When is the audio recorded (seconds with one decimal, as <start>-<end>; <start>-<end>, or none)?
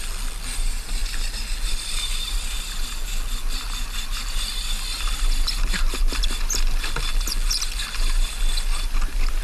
0.0-9.4